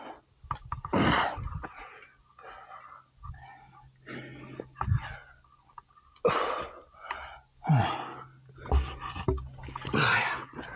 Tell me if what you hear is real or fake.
real